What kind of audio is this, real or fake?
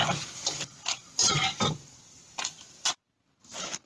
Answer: fake